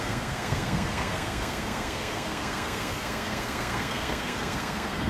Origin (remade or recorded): remade